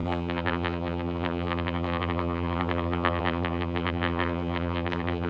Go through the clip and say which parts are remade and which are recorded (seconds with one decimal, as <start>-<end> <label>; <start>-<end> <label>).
0.0-5.3 remade